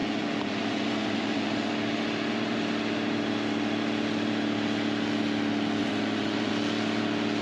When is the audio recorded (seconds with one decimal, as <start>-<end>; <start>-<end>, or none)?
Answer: 1.7-5.8; 6.5-7.4